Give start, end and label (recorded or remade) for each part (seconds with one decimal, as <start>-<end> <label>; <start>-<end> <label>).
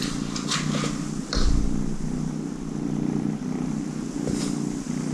0.0-5.1 recorded